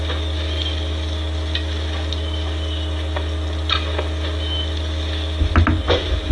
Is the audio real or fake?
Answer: real